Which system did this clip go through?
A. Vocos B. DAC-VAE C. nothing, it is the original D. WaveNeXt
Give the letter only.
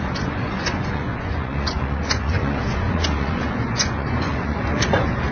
A